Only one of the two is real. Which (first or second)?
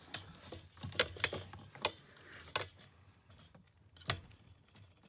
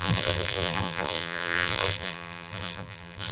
first